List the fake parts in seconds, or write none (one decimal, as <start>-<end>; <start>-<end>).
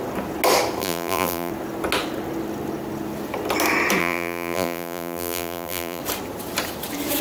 0.8-1.5; 4.0-6.0